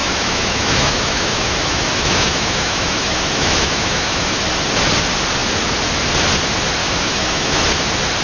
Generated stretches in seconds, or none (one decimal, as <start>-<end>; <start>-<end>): 0.0-4.4; 6.8-7.6